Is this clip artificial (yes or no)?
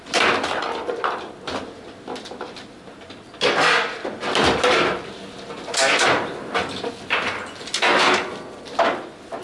no